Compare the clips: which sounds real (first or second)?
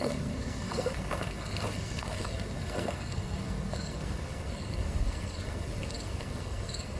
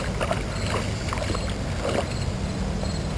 second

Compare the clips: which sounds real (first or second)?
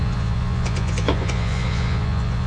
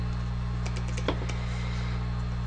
second